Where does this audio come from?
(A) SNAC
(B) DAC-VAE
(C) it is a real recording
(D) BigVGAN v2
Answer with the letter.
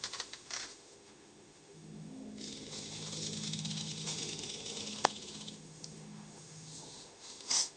B